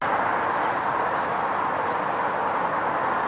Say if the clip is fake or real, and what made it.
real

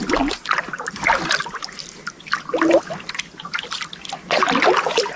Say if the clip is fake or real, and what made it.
real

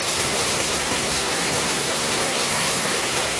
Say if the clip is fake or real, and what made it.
fake, codec, SNAC